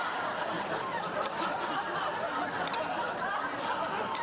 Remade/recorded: recorded